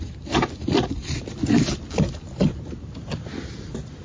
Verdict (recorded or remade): recorded